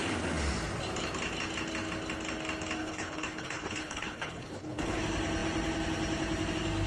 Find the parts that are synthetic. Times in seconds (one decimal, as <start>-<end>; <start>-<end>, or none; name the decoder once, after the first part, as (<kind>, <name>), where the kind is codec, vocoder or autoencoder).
2.8-5.0 (codec, HILCodec)